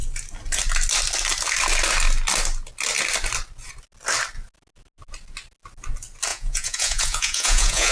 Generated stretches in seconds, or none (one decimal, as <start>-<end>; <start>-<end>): 6.3-7.9